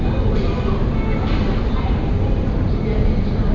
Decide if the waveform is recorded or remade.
recorded